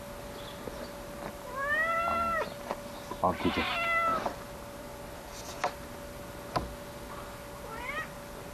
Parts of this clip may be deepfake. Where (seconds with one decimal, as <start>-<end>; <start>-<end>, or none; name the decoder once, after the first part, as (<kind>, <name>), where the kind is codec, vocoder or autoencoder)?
4.1-5.5 (vocoder, BigVGAN v2)